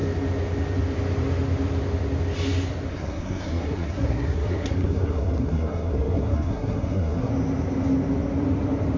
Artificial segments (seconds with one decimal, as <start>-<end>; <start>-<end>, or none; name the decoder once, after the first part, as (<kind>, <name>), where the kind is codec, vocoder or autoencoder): 2.9-7.3 (codec, SNAC)